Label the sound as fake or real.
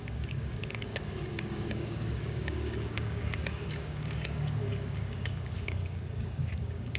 fake